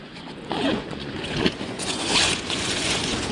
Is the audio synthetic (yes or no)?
yes